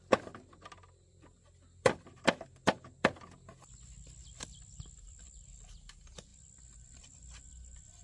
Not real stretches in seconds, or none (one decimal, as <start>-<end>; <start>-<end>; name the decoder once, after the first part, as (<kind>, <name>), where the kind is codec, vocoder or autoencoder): none